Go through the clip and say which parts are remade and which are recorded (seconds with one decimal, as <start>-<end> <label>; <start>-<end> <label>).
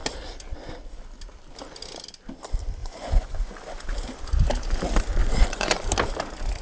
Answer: 0.0-2.8 recorded; 2.8-3.5 remade; 3.5-5.2 recorded; 5.2-5.9 remade; 5.9-6.6 recorded